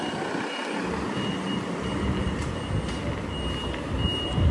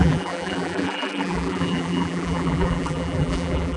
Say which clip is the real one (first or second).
first